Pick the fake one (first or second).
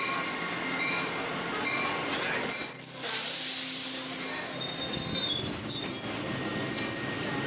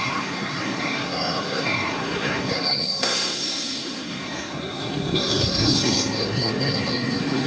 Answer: second